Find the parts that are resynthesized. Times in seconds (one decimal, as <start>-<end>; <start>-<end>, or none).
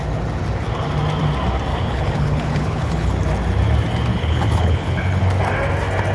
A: 1.7-3.1; 4.1-5.2